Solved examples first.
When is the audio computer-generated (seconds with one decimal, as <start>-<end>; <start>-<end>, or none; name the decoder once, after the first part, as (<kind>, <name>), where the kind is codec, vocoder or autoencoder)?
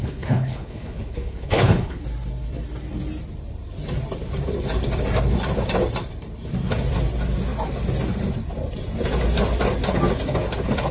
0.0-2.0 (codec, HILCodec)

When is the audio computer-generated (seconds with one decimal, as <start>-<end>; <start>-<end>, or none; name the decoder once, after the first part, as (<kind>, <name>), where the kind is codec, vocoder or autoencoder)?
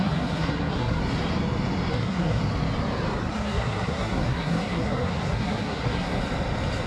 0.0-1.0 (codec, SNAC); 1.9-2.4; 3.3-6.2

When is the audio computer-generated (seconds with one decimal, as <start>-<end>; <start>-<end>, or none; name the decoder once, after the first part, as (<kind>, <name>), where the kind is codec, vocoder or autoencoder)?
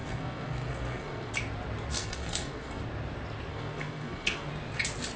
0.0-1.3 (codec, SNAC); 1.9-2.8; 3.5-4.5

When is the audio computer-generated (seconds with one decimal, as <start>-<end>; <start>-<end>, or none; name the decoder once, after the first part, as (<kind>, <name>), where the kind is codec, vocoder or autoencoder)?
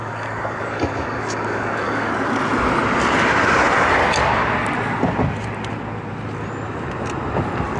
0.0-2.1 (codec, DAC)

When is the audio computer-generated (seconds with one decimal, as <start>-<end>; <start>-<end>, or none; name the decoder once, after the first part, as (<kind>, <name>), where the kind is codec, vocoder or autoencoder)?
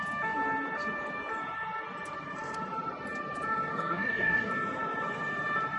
3.7-4.5 (codec, SNAC)